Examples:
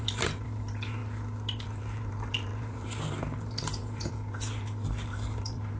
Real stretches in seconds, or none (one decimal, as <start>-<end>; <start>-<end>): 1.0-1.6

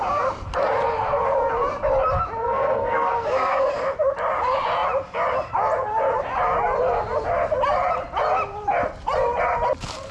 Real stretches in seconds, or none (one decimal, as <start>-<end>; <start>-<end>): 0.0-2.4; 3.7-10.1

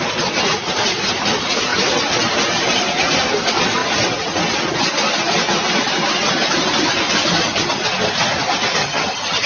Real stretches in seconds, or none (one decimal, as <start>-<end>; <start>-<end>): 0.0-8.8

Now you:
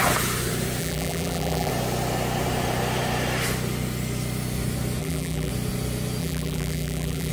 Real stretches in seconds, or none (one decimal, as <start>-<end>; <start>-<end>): 0.0-0.8; 1.7-5.0; 5.5-6.2

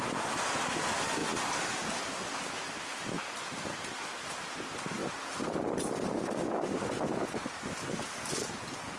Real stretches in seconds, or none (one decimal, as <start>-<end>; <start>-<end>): 0.0-9.0